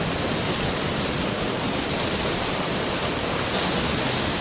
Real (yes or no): yes